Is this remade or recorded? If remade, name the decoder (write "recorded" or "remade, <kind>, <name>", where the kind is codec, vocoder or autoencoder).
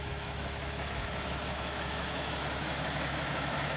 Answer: remade, autoencoder, DAC-VAE